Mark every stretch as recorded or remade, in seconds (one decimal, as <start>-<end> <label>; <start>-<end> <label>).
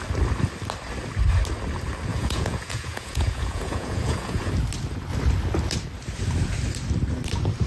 0.0-2.1 recorded; 2.1-4.5 remade; 4.5-7.7 recorded